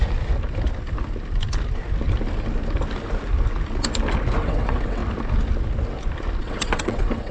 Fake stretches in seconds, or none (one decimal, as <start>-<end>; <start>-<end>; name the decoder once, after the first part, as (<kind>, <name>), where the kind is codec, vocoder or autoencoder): 4.4-5.0 (vocoder, WaveNeXt); 6.4-7.3